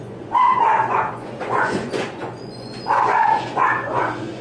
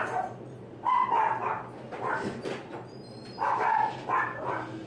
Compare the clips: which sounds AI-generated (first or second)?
first